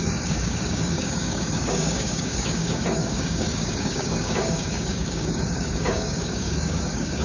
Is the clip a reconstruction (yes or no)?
yes